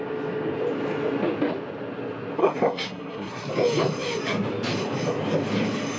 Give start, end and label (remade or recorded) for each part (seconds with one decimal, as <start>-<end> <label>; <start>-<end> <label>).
0.0-2.4 recorded; 2.4-3.5 remade; 3.5-6.0 recorded